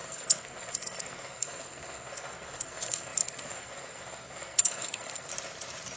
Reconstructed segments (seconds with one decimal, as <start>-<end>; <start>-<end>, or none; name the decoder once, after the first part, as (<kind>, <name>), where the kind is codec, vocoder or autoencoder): 0.0-5.3 (codec, SNAC)